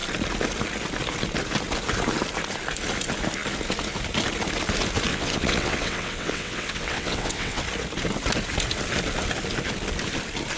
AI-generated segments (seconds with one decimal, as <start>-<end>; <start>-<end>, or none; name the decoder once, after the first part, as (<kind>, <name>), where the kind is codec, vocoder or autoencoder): 5.1-7.6 (vocoder, WaveNeXt)